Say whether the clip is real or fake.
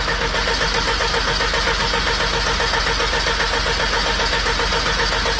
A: real